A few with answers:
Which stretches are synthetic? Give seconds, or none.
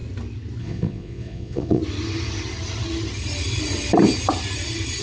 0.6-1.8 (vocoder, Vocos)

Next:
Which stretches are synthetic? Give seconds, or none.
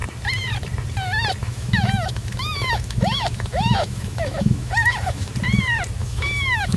1.4-5.3 (autoencoder, DAC-VAE); 6.0-6.8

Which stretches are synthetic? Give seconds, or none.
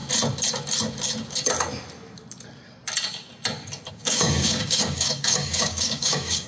3.9-6.5 (codec, DAC)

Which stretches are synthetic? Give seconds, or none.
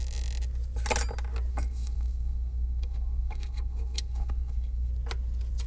1.5-4.9 (codec, SNAC)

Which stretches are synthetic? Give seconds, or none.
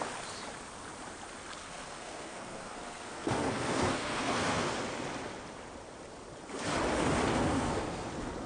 1.6-4.7 (codec, SNAC); 7.3-8.1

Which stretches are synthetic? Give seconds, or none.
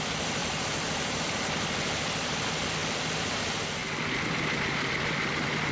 0.4-1.4 (vocoder, BigVGAN v2); 3.8-4.9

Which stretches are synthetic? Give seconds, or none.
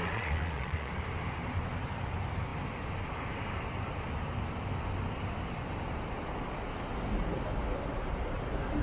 0.0-0.9 (vocoder, Vocos)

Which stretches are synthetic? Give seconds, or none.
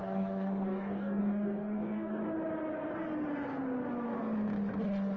0.0-2.2 (codec, DAC)